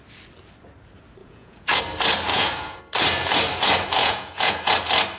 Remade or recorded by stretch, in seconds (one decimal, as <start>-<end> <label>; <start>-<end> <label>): 0.0-1.2 recorded; 1.2-1.8 remade; 1.8-2.3 recorded; 2.3-2.8 remade; 2.8-4.0 recorded; 4.0-4.7 remade; 4.7-5.2 recorded